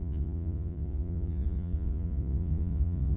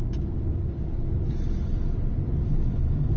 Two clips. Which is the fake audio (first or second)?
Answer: first